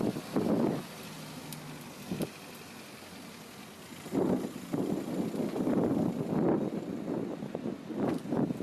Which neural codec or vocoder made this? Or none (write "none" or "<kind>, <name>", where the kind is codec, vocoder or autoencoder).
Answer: none